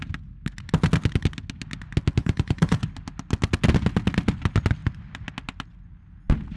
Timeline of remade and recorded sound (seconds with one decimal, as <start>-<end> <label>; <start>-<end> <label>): 0.0-2.2 recorded; 2.2-2.8 remade; 2.8-6.6 recorded